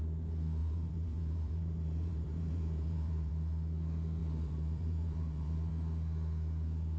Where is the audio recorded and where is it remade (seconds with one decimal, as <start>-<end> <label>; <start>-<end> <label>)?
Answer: 0.0-0.6 recorded; 0.6-3.3 remade; 3.3-4.2 recorded; 4.2-5.7 remade; 5.7-7.0 recorded